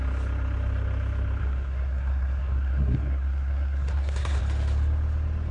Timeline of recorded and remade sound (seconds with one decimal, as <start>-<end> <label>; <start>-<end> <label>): 0.0-1.4 recorded; 1.4-4.4 remade; 4.4-5.5 recorded

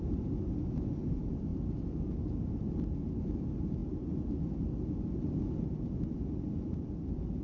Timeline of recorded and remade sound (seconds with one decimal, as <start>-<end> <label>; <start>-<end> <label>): 0.0-7.4 recorded

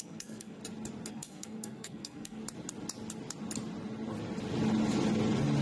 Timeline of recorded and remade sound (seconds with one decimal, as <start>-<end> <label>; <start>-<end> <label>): 0.0-0.6 remade; 0.6-1.1 recorded; 1.1-2.4 remade; 2.4-5.6 recorded

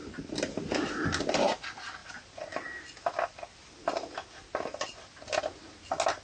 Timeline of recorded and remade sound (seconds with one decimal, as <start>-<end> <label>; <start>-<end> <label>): 0.0-6.2 recorded

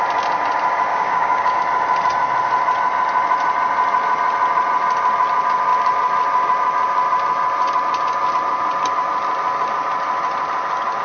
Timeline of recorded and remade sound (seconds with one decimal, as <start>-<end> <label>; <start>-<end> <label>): 0.0-0.9 recorded; 0.9-1.6 remade; 1.6-11.0 recorded

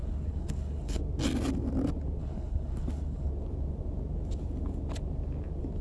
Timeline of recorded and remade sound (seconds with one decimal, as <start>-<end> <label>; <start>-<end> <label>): 0.0-1.0 remade; 1.0-2.2 recorded; 2.2-3.3 remade; 3.3-5.8 recorded